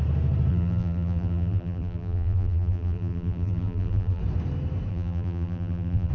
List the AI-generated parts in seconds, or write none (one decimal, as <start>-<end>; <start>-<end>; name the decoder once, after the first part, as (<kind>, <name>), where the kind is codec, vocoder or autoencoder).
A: 0.5-4.2 (vocoder, BigVGAN v2); 4.9-6.1